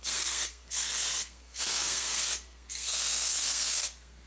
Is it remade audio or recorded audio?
remade